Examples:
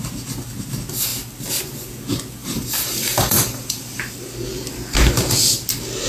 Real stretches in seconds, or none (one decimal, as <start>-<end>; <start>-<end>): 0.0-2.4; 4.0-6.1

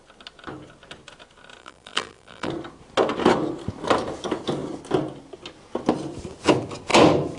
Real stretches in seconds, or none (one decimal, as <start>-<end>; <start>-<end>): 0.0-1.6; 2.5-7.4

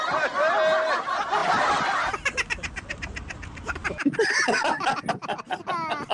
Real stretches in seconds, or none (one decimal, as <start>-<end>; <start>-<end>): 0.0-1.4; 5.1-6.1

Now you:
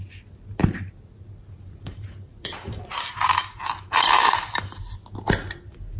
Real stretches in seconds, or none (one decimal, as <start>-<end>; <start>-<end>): 0.0-1.4; 5.0-6.0

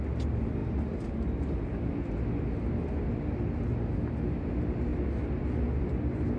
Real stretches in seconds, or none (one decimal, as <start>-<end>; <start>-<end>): 0.0-0.6; 1.1-4.9; 5.4-6.4

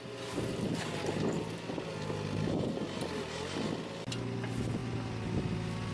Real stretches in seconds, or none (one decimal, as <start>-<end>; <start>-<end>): 0.0-5.9